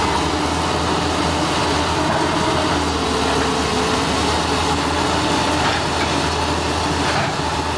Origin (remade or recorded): recorded